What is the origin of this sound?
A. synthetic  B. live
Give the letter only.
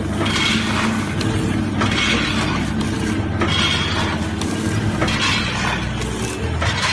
B